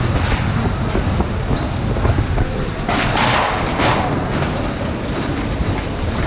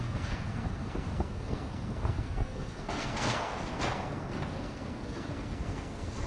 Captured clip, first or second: first